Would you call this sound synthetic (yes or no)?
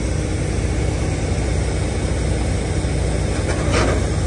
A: no